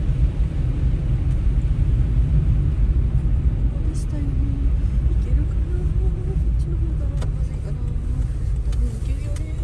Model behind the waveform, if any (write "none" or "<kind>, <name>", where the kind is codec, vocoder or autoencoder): none